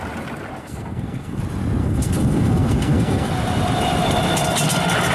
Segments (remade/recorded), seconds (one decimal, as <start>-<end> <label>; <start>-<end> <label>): 0.0-0.6 recorded; 0.6-1.4 remade; 1.4-1.8 recorded; 1.8-3.3 remade; 3.3-5.1 recorded